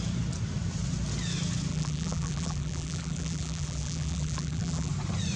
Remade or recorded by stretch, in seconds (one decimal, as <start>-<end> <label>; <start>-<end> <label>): 0.0-1.7 recorded; 1.7-4.9 remade; 4.9-5.4 recorded